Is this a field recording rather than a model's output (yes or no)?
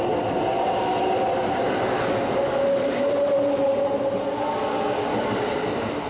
yes